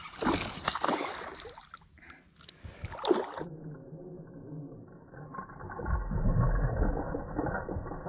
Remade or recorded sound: recorded